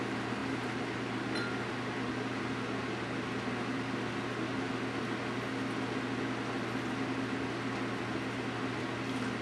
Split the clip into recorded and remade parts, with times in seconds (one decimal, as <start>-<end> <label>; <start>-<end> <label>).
0.0-9.4 recorded